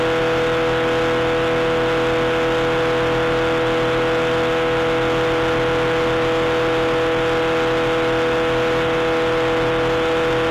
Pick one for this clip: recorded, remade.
recorded